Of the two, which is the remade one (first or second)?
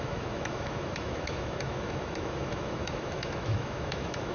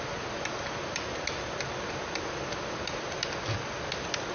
first